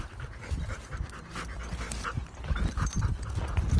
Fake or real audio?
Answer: real